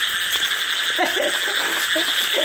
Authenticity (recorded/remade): recorded